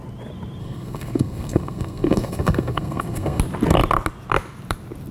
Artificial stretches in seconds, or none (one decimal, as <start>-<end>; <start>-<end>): 0.6-3.4